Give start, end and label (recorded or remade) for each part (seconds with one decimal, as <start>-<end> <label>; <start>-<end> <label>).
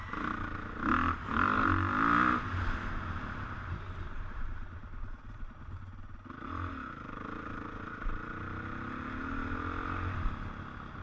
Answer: 0.0-4.8 recorded; 4.8-6.7 remade; 6.7-11.0 recorded